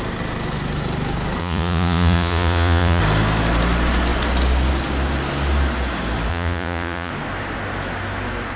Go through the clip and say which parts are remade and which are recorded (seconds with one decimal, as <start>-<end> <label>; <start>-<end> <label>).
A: 0.0-1.4 recorded; 1.4-3.0 remade; 3.0-6.3 recorded; 6.3-7.1 remade; 7.1-8.6 recorded